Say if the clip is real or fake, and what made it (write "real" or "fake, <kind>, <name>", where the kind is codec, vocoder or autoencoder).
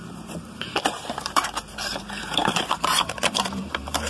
fake, vocoder, BigVGAN v2